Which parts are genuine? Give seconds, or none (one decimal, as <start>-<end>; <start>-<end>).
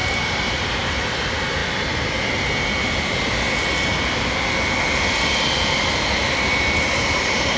1.2-6.2